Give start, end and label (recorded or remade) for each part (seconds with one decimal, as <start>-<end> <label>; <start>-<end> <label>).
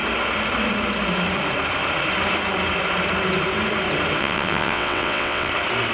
0.0-4.2 recorded; 4.2-5.5 remade; 5.5-5.9 recorded